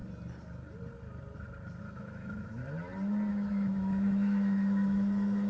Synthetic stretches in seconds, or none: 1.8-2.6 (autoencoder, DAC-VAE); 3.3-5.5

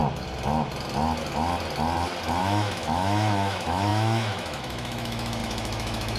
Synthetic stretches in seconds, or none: 2.4-6.2 (autoencoder, DAC-VAE)

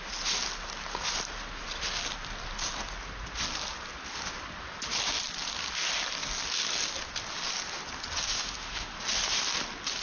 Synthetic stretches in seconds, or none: 8.3-8.9 (autoencoder, DAC-VAE)